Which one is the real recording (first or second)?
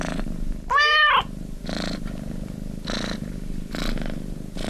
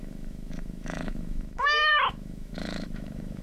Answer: first